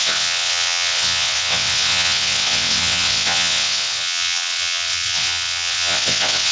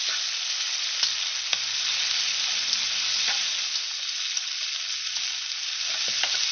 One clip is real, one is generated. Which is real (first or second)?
second